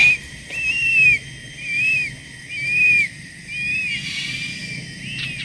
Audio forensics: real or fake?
real